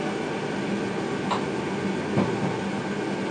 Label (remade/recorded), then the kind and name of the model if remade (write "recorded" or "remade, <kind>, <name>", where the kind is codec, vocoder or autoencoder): recorded